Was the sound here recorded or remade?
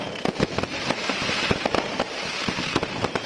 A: remade